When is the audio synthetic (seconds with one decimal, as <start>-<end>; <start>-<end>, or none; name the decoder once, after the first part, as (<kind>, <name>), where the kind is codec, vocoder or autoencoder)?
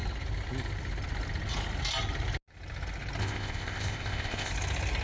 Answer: 3.2-4.5 (codec, ZipCodec)